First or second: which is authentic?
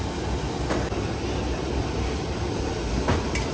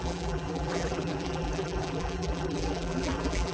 first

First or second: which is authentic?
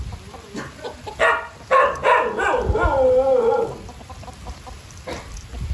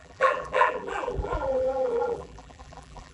first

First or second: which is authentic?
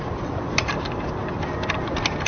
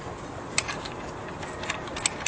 second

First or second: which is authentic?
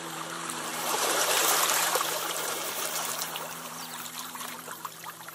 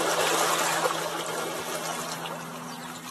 second